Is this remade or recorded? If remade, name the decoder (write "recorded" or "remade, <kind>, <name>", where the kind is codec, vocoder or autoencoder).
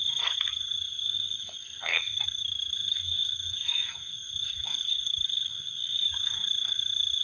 remade, codec, SNAC